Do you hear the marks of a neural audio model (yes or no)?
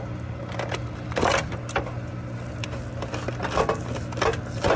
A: no